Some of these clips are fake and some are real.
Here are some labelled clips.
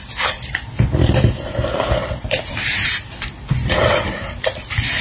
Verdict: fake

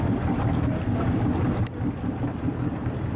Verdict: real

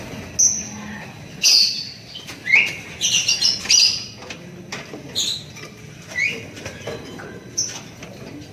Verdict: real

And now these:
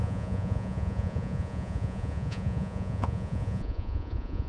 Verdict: fake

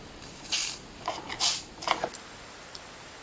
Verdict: real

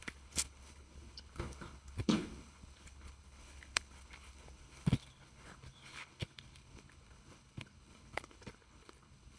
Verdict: fake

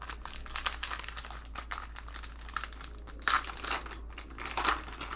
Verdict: real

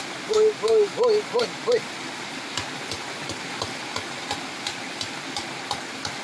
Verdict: real